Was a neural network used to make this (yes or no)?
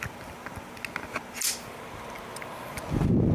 no